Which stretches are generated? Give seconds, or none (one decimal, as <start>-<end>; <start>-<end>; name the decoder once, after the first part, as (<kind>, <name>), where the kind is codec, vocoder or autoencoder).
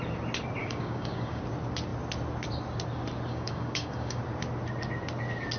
0.6-1.4 (codec, DAC); 3.3-4.2